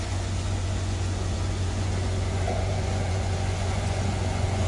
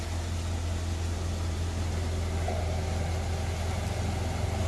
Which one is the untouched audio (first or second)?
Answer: second